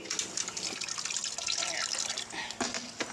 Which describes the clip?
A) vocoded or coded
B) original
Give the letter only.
B